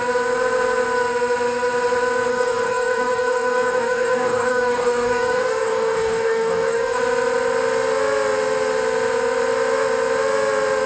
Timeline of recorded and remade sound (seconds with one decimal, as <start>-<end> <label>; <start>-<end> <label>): 0.0-2.3 recorded; 2.3-7.0 remade; 7.0-10.9 recorded